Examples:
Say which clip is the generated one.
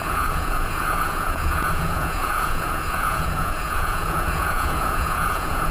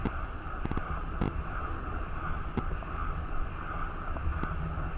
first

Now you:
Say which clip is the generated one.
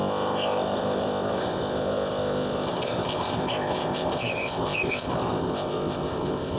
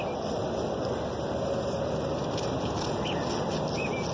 first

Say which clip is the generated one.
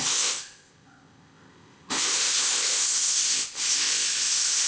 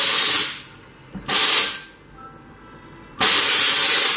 first